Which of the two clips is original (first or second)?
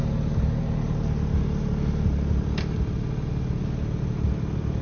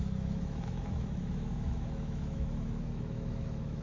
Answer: first